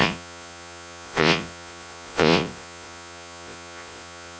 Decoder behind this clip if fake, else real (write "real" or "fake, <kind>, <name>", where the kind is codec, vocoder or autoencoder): fake, vocoder, Vocos